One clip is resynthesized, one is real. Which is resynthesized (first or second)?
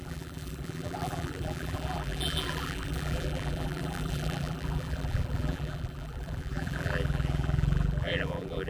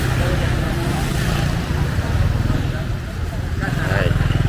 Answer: first